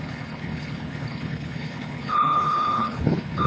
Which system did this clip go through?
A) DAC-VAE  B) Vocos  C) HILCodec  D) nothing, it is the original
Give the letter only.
C